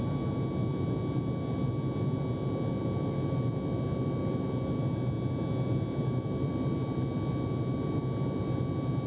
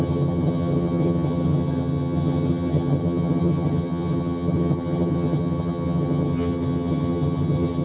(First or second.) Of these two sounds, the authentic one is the first